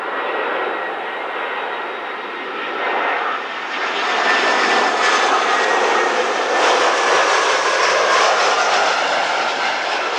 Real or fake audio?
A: real